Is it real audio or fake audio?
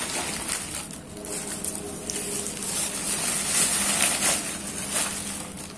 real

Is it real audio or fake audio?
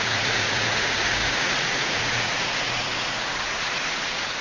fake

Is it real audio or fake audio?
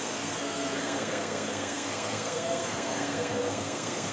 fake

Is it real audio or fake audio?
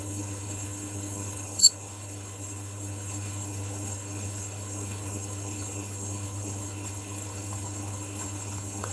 fake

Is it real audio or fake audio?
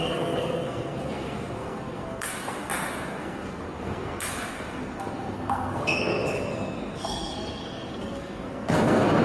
fake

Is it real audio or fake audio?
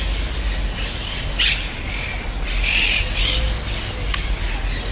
real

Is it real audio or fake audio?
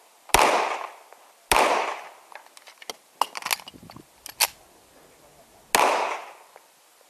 real